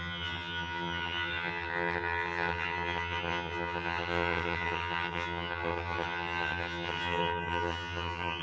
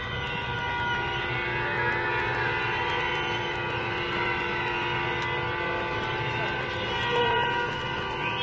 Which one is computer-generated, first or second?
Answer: first